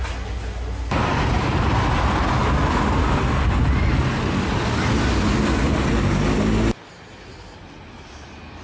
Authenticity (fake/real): real